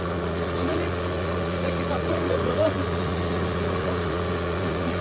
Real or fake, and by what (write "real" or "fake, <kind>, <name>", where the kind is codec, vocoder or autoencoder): fake, vocoder, Vocos